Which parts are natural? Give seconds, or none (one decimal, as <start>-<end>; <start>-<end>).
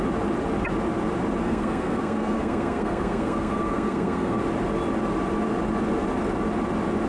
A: 0.0-1.4; 4.4-7.1